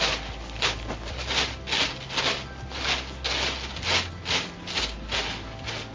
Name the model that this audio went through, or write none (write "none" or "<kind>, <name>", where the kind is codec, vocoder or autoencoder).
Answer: none